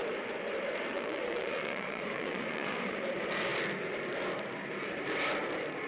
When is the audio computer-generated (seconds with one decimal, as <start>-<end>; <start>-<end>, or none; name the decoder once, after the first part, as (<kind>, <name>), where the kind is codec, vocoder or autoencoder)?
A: 0.9-3.1 (vocoder, Vocos)